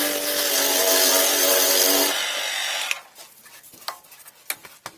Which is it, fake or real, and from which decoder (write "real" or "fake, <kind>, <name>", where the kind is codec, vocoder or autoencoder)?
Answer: real